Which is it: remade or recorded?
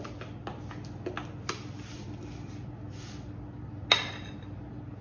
recorded